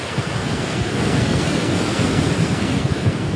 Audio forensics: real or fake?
fake